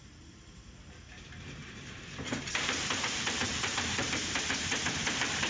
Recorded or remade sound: remade